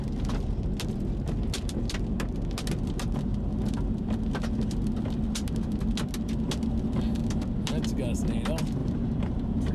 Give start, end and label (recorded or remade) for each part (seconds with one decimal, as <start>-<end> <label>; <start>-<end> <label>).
0.0-8.8 recorded; 8.8-9.7 remade